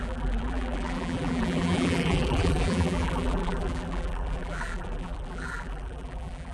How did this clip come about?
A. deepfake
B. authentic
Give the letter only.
A